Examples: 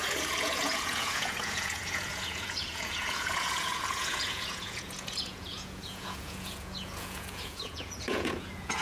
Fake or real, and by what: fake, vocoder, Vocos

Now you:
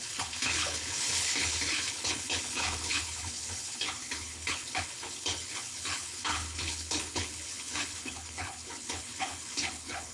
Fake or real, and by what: fake, codec, HILCodec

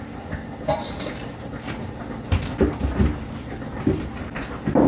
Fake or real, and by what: fake, vocoder, BigVGAN v2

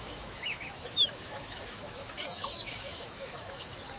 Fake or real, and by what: fake, autoencoder, DAC-VAE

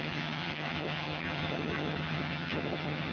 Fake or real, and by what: fake, vocoder, HiFi-GAN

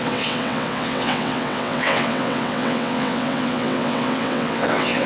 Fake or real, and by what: fake, vocoder, WaveNeXt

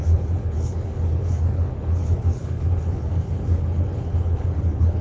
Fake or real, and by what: fake, codec, HILCodec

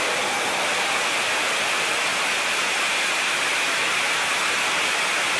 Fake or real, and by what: real